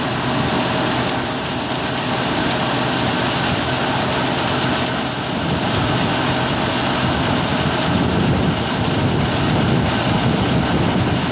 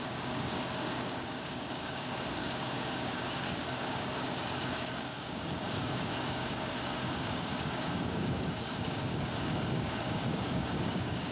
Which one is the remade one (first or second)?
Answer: second